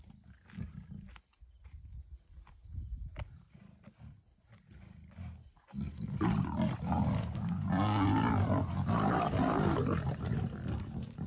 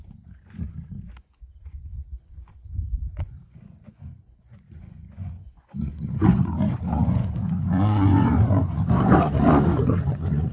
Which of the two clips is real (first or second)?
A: first